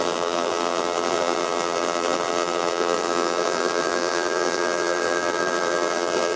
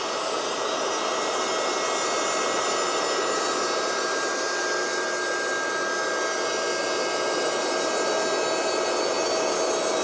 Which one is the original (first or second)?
second